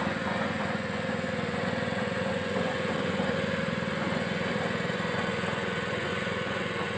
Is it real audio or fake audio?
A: fake